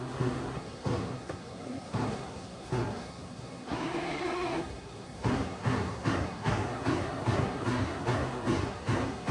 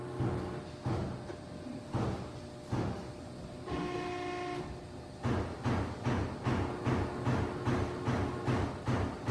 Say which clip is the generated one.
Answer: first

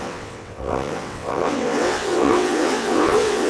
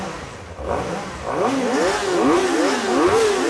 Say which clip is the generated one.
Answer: first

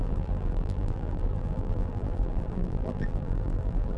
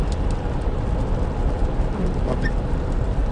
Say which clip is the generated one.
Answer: first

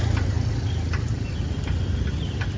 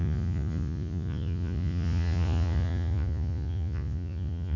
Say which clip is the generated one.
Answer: second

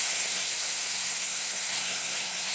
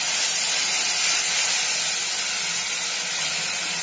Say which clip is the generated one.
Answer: first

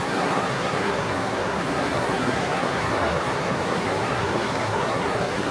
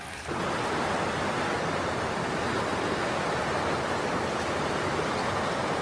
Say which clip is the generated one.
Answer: first